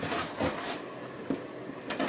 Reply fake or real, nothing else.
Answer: real